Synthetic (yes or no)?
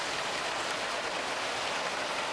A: no